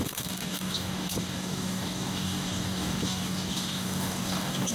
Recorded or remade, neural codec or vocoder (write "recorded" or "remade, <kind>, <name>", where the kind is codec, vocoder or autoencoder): remade, codec, DAC